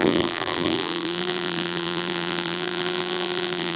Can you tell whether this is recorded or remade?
remade